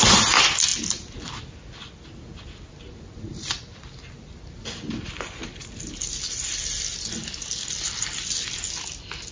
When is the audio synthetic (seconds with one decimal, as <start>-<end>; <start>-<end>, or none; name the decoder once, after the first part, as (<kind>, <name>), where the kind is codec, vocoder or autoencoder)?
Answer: none